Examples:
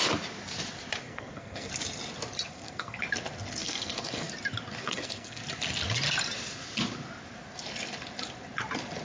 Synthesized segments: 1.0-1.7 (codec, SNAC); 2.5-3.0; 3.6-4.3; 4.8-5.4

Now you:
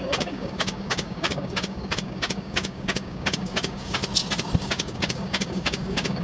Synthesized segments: 0.0-4.0 (codec, DAC); 4.6-6.2

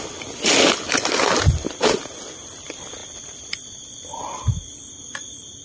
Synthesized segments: none

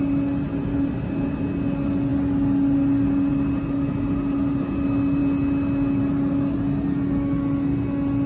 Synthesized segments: none

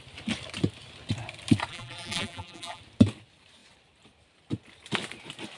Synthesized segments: 1.7-2.8 (vocoder, BigVGAN v2)

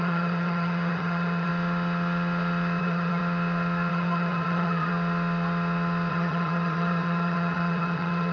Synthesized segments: 0.0-1.5 (vocoder, HiFi-GAN); 2.8-3.2; 3.9-4.9; 6.1-8.3

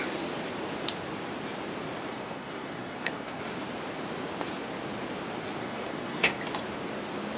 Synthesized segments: 2.1-3.4 (codec, SNAC); 5.6-6.4

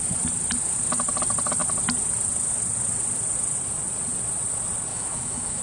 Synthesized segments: 4.9-5.6 (autoencoder, DAC-VAE)